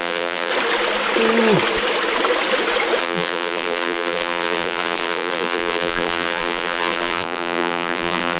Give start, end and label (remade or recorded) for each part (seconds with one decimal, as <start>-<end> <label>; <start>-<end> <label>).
0.0-0.5 remade; 0.5-3.0 recorded; 3.0-8.4 remade